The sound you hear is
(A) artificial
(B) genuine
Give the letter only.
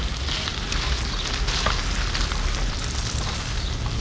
B